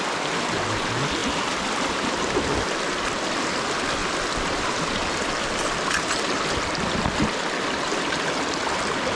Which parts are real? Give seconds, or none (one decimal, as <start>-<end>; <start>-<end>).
0.0-1.2; 2.8-4.0; 4.8-9.2